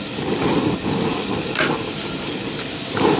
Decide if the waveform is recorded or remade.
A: recorded